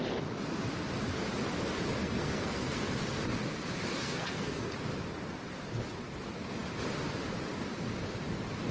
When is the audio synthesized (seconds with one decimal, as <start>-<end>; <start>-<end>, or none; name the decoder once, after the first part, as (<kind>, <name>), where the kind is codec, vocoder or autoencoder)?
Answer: 2.0-2.9 (codec, SNAC); 4.0-4.7